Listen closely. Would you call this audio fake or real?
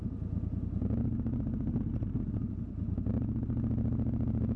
real